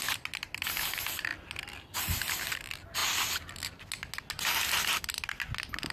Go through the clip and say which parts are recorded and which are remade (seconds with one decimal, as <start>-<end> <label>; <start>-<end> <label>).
0.0-5.9 recorded